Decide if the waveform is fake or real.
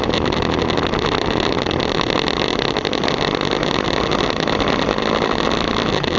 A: real